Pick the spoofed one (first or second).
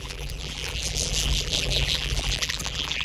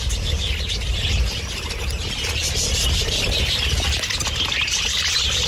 first